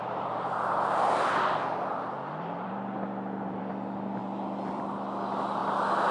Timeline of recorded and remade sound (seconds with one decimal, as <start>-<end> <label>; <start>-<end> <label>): 0.0-3.7 remade; 3.7-4.2 recorded; 4.2-4.8 remade; 4.8-6.1 recorded